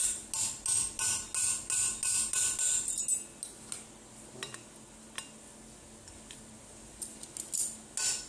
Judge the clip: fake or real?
real